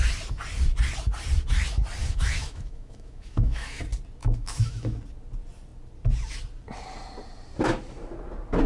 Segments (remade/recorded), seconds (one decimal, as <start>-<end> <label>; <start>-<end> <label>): 0.0-2.0 recorded; 2.0-3.8 remade; 3.8-4.2 recorded; 4.2-5.0 remade; 5.0-8.7 recorded